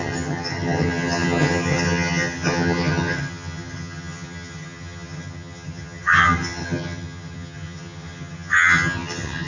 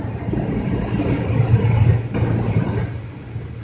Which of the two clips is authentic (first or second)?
second